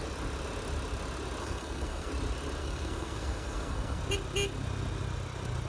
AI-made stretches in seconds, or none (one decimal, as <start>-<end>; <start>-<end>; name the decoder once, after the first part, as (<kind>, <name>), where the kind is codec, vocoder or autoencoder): 1.4-2.1 (codec, SNAC); 2.6-4.0